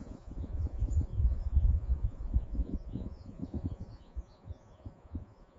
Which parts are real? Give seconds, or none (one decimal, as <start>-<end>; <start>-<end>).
none